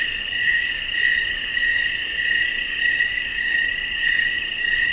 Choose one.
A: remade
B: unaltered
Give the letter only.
A